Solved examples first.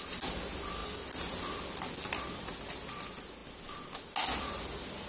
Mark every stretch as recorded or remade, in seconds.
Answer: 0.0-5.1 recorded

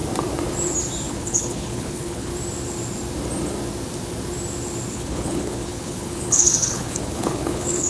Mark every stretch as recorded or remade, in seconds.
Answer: 0.0-1.1 recorded; 1.1-2.3 remade; 2.3-4.9 recorded; 4.9-7.9 remade

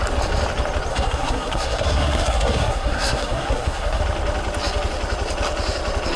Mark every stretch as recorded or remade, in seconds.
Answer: 0.0-0.9 recorded; 0.9-4.0 remade; 4.0-6.2 recorded

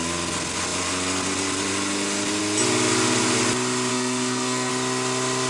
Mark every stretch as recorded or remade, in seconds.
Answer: 0.0-3.9 recorded; 3.9-4.7 remade; 4.7-5.5 recorded

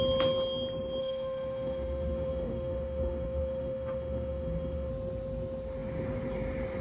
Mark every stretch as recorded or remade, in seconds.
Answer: 0.0-1.0 recorded; 1.0-4.9 remade; 4.9-6.8 recorded